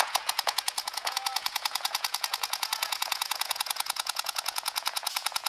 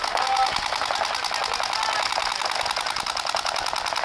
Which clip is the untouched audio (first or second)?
second